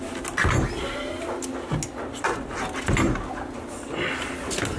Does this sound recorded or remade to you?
recorded